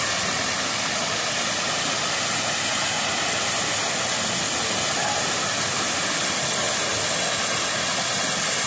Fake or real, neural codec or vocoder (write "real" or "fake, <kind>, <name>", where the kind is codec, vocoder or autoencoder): real